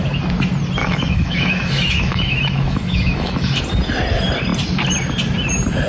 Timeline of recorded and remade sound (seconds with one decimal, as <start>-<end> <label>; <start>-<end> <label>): 0.0-0.8 recorded; 0.8-3.6 remade; 3.6-5.9 recorded